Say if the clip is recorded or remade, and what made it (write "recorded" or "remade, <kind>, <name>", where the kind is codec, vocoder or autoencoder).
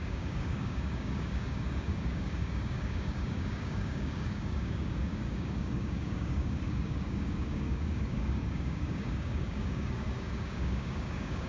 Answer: remade, codec, DAC